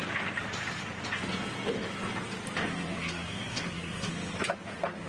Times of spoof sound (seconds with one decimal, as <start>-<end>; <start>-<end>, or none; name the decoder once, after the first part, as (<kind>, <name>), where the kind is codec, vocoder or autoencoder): 2.7-4.1 (codec, SNAC)